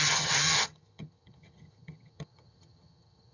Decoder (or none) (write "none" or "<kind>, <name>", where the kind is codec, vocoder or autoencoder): vocoder, HiFi-GAN